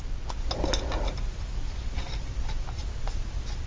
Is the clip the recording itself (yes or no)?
yes